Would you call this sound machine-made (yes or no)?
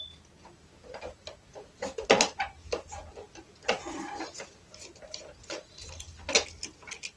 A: no